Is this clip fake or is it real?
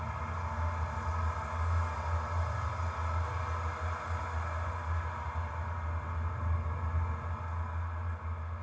real